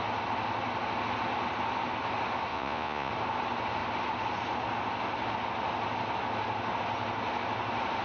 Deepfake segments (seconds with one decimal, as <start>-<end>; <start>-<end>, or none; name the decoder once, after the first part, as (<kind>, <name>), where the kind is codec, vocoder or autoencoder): 2.5-3.1 (vocoder, Vocos)